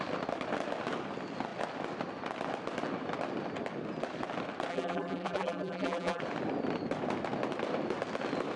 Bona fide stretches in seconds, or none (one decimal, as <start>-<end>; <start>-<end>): 0.0-4.7; 6.2-8.6